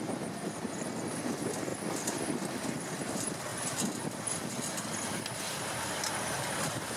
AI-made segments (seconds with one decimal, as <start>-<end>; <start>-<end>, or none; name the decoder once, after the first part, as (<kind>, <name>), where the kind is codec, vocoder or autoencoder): 0.0-1.7 (vocoder, BigVGAN v2); 3.1-3.5; 5.2-7.0